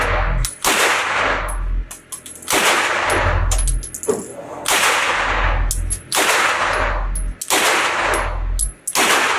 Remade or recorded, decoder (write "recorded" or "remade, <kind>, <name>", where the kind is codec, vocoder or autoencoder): recorded